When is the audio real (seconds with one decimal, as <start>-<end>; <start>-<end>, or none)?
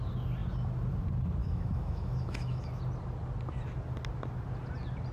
0.0-1.4; 2.8-5.1